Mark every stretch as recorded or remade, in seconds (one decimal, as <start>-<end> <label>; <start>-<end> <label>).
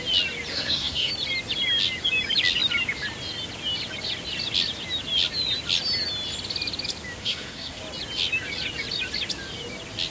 0.0-0.5 recorded; 0.5-1.1 remade; 1.1-7.2 recorded; 7.2-7.8 remade; 7.8-10.1 recorded